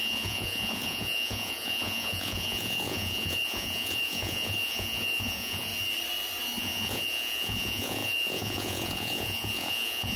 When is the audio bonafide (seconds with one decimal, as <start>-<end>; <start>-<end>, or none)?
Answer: 5.7-6.6